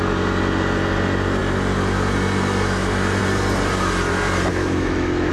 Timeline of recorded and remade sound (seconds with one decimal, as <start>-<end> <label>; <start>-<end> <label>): 0.0-4.5 recorded; 4.5-5.3 remade